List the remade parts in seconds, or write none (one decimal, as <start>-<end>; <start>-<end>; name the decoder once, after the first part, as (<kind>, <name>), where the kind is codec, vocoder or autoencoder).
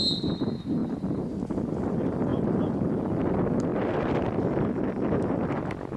none